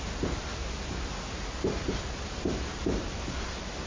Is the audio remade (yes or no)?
no